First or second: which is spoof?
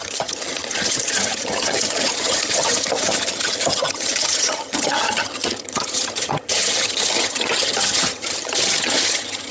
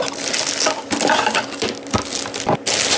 first